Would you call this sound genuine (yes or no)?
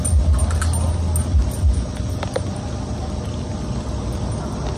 yes